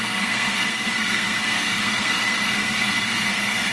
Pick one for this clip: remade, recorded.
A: remade